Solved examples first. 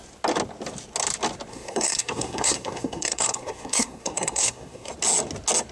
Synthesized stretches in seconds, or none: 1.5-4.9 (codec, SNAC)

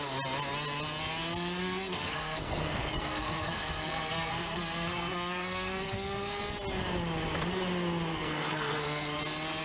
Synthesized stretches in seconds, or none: 1.6-6.4 (codec, SNAC); 8.1-9.2

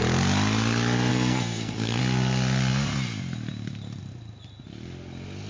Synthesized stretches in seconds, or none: 1.1-2.0 (codec, SNAC)

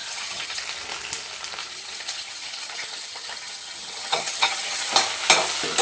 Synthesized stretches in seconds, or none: 0.0-0.6 (vocoder, HiFi-GAN); 1.6-4.9

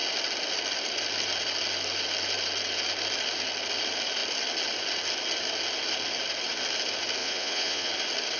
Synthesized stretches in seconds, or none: 7.2-7.9 (vocoder, Vocos)

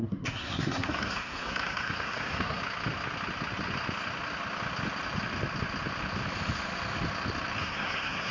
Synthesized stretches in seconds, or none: 0.0-2.6 (codec, SNAC); 7.6-8.3